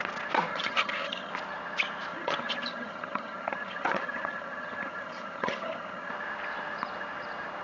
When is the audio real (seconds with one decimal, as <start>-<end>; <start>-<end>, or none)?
0.0-0.5; 1.3-2.1; 6.1-7.6